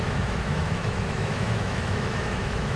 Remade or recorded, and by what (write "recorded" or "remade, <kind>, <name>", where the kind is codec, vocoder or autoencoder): remade, autoencoder, DAC-VAE